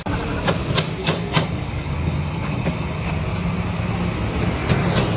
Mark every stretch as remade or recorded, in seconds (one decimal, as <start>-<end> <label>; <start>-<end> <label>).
0.0-1.0 recorded; 1.0-3.1 remade; 3.1-5.2 recorded